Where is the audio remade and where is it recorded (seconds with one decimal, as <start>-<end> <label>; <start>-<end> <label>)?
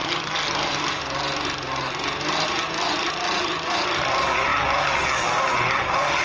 0.0-6.2 recorded